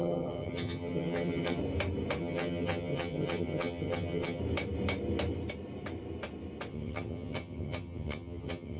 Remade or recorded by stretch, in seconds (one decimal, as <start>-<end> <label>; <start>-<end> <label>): 0.0-1.6 remade; 1.6-2.2 recorded; 2.2-4.4 remade; 4.4-6.7 recorded; 6.7-8.8 remade